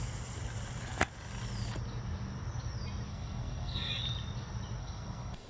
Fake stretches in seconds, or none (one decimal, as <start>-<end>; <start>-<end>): 3.1-3.9; 4.8-5.5